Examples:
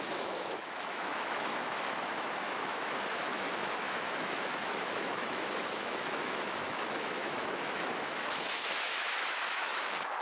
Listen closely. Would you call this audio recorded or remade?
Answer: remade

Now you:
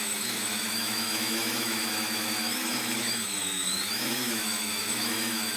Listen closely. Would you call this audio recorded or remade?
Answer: remade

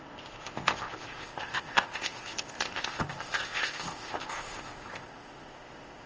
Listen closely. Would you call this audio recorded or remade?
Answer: remade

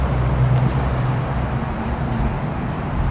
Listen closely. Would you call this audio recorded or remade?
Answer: recorded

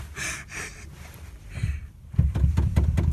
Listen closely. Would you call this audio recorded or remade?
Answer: remade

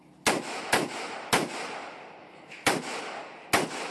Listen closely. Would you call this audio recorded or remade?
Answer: recorded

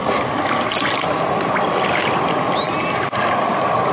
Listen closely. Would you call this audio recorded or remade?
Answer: recorded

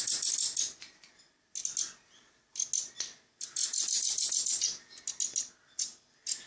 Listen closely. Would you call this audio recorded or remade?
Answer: recorded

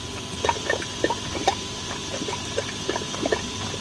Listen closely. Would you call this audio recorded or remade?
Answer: recorded